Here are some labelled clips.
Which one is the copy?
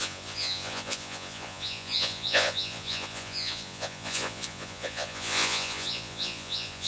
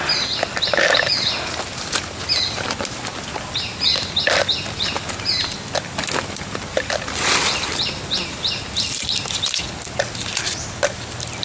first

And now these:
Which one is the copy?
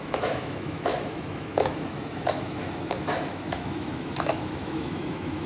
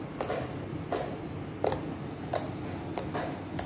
first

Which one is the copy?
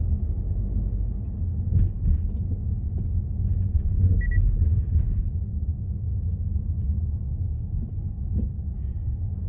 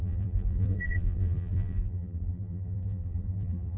second